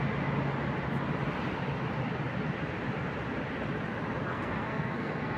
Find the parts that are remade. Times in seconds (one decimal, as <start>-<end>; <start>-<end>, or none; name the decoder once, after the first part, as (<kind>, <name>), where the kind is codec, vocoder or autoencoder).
4.2-5.4 (codec, SNAC)